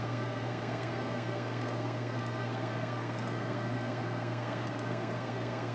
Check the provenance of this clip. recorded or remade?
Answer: remade